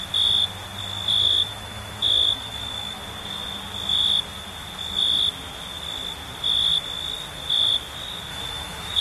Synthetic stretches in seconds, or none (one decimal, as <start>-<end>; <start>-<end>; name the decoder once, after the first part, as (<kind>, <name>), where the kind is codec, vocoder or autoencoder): 1.2-3.0 (autoencoder, DAC-VAE); 8.3-9.0